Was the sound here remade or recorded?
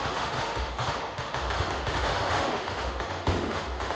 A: remade